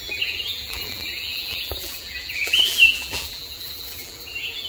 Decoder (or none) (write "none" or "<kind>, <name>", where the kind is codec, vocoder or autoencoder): vocoder, BigVGAN v2